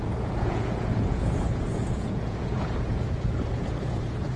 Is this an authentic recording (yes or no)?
no